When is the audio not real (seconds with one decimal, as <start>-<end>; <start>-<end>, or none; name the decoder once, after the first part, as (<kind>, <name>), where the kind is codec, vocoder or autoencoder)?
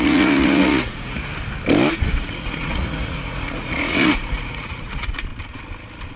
0.0-1.3 (vocoder, Vocos); 1.9-5.3